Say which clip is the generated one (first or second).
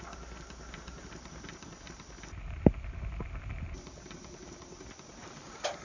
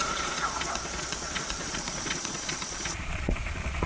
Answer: second